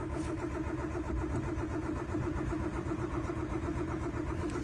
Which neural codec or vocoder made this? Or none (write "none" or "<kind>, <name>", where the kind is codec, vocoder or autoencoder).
none